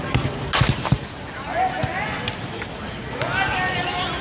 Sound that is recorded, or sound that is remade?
recorded